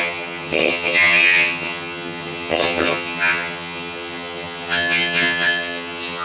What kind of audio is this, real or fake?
fake